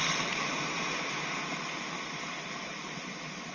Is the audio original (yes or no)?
yes